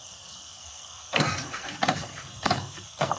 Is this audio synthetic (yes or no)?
yes